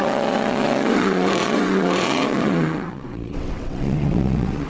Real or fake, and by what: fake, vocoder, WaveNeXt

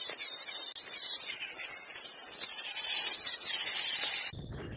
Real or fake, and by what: real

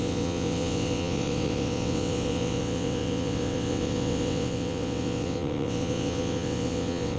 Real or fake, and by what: fake, vocoder, WaveNeXt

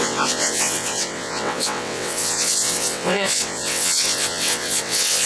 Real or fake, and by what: fake, vocoder, WaveNeXt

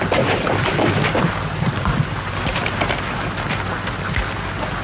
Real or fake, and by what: real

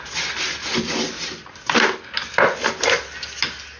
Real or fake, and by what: real